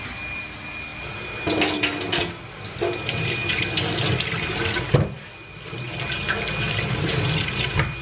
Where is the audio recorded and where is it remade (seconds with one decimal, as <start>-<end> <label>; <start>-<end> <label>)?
0.0-8.0 recorded